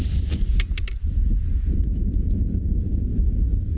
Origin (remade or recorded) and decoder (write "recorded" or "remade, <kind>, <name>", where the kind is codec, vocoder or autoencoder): recorded